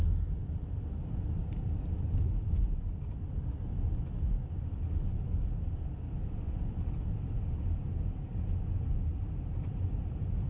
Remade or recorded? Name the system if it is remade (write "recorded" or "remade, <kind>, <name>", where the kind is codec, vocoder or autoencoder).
recorded